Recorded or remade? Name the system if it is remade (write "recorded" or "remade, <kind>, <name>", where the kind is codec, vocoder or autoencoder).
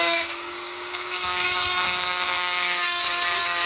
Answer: remade, codec, DAC